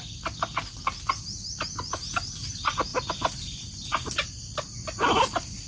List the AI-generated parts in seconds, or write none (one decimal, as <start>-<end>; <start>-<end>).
none